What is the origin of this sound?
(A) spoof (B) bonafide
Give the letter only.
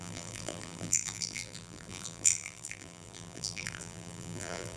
A